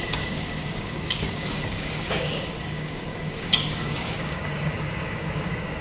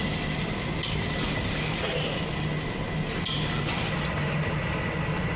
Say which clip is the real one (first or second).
second